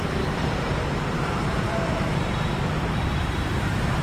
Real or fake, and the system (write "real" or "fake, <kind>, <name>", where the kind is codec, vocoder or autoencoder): fake, vocoder, BigVGAN v2